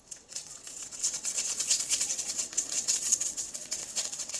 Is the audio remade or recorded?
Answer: remade